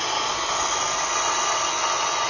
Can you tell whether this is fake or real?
real